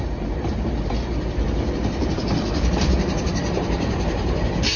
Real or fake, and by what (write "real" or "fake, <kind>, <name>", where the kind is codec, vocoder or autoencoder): fake, vocoder, BigVGAN v2